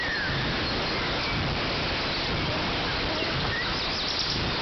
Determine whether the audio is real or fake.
real